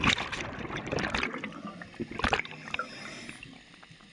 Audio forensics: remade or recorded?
recorded